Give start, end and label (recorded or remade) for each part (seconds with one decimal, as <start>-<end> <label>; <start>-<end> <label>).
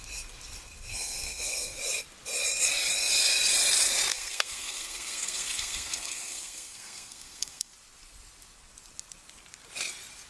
0.0-0.9 recorded; 0.9-1.8 remade; 1.8-4.1 recorded; 4.1-7.7 remade; 7.7-10.3 recorded